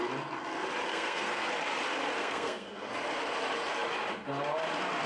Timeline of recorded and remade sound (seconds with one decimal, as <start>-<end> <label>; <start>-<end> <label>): 0.0-0.9 recorded; 0.9-1.5 remade; 1.5-2.2 recorded; 2.2-2.9 remade; 2.9-5.1 recorded